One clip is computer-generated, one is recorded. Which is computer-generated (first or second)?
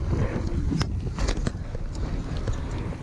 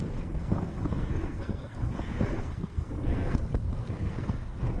second